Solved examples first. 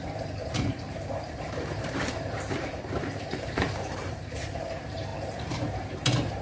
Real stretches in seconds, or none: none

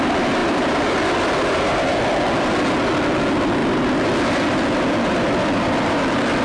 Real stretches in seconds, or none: 0.0-0.4; 1.9-3.6

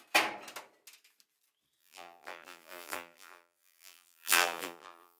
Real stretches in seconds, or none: 0.0-1.8

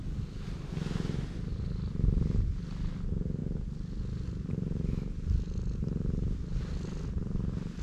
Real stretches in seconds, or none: 0.0-7.8

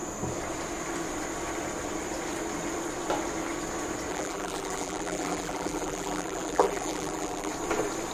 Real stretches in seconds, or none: 0.0-4.1; 7.5-8.1

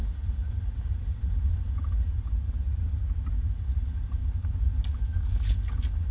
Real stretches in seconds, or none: 0.0-6.1

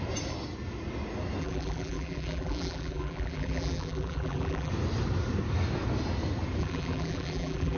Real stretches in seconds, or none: 0.0-1.4; 4.7-6.6

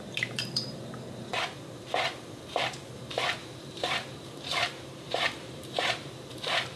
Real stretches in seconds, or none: none